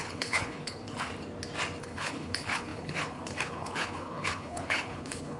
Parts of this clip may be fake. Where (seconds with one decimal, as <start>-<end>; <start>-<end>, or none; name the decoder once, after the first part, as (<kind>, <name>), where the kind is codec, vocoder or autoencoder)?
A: 0.0-1.1 (codec, HILCodec); 1.8-5.4